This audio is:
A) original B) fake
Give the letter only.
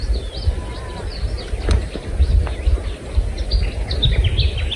A